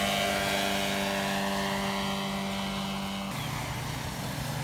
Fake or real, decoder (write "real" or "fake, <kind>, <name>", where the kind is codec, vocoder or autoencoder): real